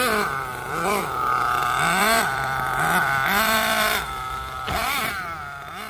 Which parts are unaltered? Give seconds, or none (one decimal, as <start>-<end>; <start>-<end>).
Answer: 0.0-0.5; 1.0-1.6; 5.1-5.9